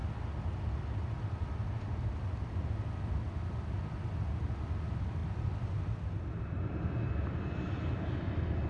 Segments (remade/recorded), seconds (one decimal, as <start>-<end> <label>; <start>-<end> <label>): 0.0-8.7 recorded

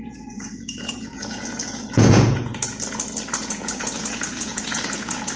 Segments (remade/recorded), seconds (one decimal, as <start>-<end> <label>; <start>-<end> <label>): 0.0-2.5 remade; 2.5-3.4 recorded; 3.4-5.4 remade

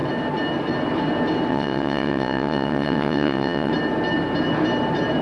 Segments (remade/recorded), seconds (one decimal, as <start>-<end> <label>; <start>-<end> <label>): 0.0-1.5 recorded; 1.5-3.7 remade; 3.7-5.2 recorded

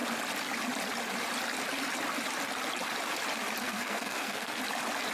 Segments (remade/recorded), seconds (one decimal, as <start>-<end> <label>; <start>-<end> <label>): 0.0-3.6 recorded; 3.6-4.6 remade; 4.6-5.1 recorded

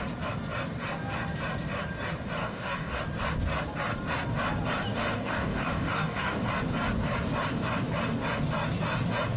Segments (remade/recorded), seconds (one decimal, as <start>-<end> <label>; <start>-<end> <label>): 0.0-2.4 recorded; 2.4-3.0 remade; 3.0-5.1 recorded; 5.1-6.5 remade; 6.5-9.4 recorded

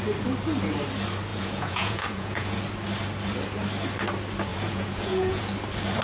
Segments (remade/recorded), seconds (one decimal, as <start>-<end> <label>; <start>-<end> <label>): 0.0-1.3 recorded; 1.3-2.6 remade; 2.6-4.5 recorded; 4.5-5.4 remade; 5.4-6.0 recorded

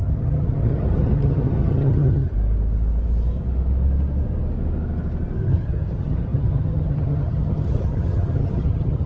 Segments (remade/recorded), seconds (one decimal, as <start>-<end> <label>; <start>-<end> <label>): 0.0-2.3 remade; 2.3-5.5 recorded; 5.5-9.1 remade

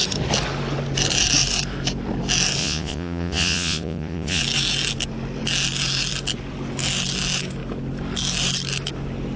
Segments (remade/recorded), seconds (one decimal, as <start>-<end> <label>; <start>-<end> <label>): 0.0-2.6 recorded; 2.6-4.4 remade; 4.4-9.4 recorded